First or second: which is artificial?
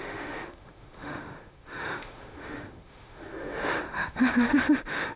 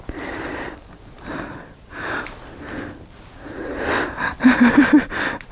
first